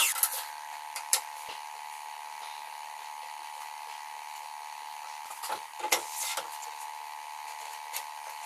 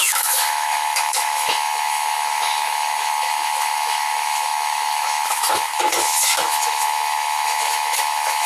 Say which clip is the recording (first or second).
first